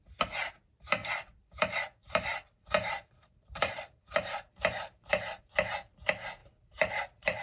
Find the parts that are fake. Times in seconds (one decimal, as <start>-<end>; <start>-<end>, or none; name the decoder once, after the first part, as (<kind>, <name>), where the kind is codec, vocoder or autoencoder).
1.0-5.4 (vocoder, BigVGAN v2); 6.4-7.4